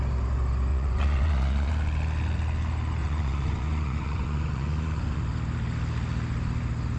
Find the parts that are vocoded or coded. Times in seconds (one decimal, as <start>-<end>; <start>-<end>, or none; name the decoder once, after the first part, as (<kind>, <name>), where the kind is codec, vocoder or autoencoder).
0.7-1.7 (vocoder, Vocos); 3.0-5.2